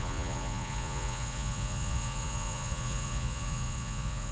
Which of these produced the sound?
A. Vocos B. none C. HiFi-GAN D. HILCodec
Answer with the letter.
A